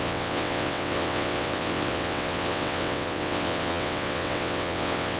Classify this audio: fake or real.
fake